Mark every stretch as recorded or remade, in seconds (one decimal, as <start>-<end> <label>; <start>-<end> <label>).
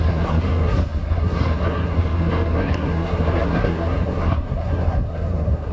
0.0-5.7 remade